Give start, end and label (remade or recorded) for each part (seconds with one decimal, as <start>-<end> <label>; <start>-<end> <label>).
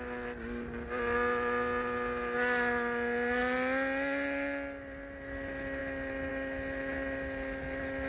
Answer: 0.0-8.1 recorded